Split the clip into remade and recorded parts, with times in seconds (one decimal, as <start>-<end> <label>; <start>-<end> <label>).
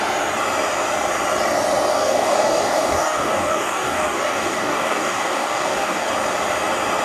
0.0-1.9 recorded; 1.9-6.1 remade; 6.1-7.0 recorded